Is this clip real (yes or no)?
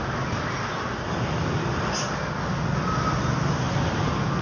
yes